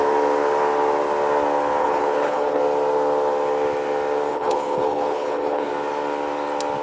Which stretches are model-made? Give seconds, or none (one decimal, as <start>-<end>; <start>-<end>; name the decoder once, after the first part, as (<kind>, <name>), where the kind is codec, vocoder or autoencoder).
1.8-2.6 (codec, HILCodec); 4.3-5.7